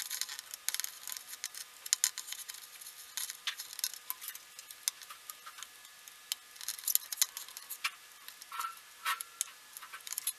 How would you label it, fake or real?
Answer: real